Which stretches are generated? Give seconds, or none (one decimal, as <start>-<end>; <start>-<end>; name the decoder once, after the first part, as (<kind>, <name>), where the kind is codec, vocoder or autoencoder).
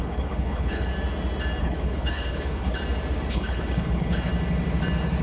0.0-0.9 (codec, HILCodec); 1.6-2.8; 3.3-4.3